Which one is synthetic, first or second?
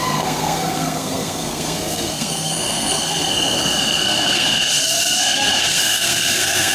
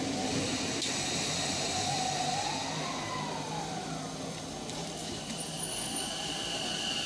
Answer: first